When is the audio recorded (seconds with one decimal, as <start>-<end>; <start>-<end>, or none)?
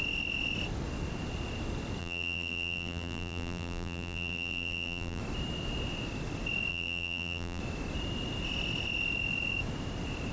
0.0-2.0; 5.2-6.7; 7.6-10.3